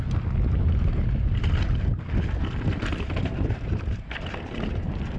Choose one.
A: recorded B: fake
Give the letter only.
A